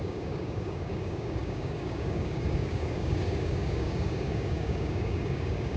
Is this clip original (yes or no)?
no